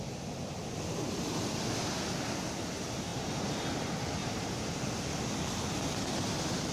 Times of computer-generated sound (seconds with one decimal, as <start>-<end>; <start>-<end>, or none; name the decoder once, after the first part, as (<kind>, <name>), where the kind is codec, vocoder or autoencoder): 3.1-3.6 (vocoder, BigVGAN v2); 4.2-4.9